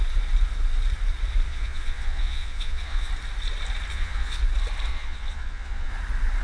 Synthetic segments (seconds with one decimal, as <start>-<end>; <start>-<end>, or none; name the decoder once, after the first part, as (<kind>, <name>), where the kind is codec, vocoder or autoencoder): 1.5-3.1 (vocoder, Vocos); 3.9-4.4; 4.9-5.9